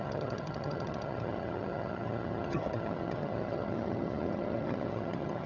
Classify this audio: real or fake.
fake